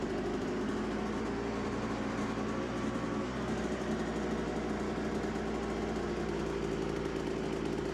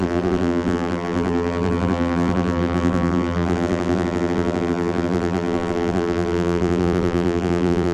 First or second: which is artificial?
second